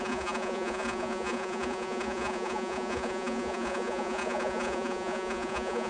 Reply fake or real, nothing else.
fake